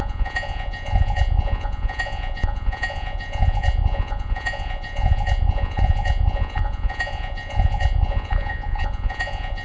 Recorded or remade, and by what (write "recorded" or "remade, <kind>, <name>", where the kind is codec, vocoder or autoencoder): remade, vocoder, Vocos